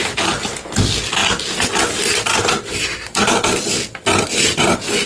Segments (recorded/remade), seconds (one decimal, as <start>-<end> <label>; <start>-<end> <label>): 0.0-5.1 recorded